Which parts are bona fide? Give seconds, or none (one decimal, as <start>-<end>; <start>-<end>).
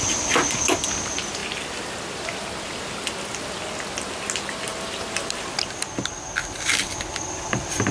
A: 0.0-1.4; 3.5-4.7